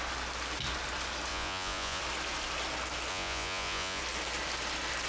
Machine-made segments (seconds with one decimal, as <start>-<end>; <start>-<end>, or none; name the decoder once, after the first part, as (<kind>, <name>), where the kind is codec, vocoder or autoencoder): 1.3-2.0 (vocoder, Vocos); 3.1-4.0